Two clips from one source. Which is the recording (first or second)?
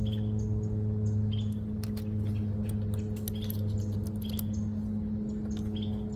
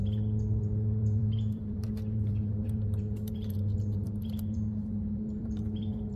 first